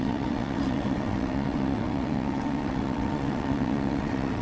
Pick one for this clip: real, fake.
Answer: fake